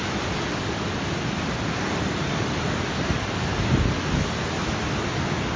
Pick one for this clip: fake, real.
real